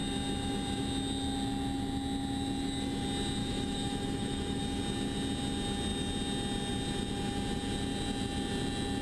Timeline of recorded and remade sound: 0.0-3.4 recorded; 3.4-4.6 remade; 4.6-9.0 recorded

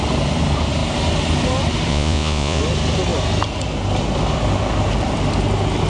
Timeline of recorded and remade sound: 0.0-1.9 recorded; 1.9-2.6 remade; 2.6-5.9 recorded

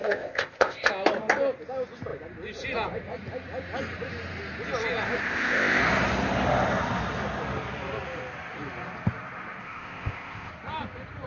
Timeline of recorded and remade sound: 0.0-0.9 remade; 0.9-5.2 recorded; 5.2-5.8 remade; 5.8-9.6 recorded; 9.6-10.5 remade; 10.5-11.3 recorded

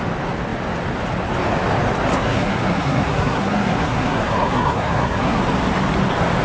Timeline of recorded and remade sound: 0.0-2.1 recorded; 2.1-5.4 remade; 5.4-6.4 recorded